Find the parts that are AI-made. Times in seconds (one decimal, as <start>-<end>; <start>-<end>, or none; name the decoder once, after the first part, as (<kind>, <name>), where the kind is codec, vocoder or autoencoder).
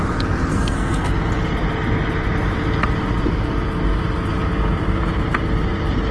0.5-1.1 (codec, SNAC)